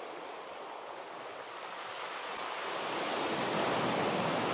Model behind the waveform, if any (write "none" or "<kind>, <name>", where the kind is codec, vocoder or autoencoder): none